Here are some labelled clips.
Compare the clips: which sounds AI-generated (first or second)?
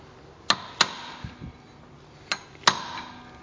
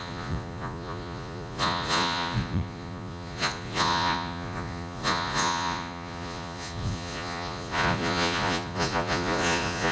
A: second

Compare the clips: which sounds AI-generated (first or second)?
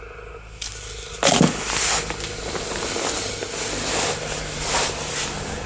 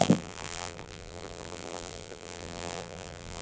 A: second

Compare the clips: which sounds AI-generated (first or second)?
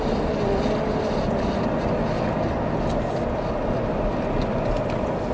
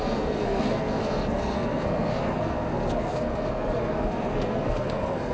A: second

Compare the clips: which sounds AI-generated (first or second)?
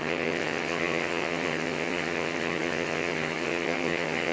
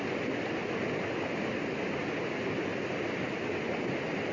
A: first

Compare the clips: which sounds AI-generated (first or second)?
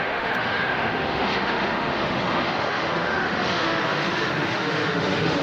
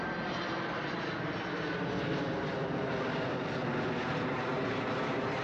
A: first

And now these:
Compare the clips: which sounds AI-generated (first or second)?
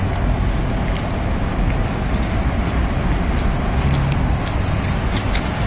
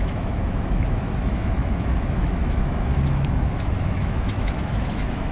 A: second